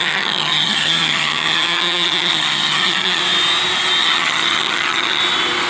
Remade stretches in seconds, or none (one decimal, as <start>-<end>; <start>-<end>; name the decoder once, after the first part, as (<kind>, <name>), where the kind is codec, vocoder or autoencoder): 0.0-3.2 (vocoder, HiFi-GAN); 4.0-5.2